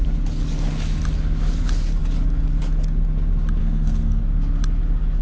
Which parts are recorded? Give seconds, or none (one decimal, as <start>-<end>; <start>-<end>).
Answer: 0.0-3.6; 4.2-5.2